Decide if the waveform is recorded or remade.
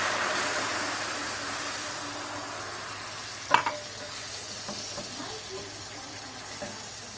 recorded